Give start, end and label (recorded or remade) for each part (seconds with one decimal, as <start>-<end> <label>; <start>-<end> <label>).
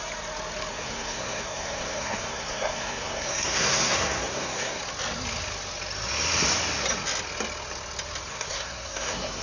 0.0-0.7 recorded; 0.7-4.8 remade; 4.8-8.3 recorded; 8.3-9.4 remade